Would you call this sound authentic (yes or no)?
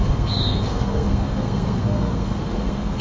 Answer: no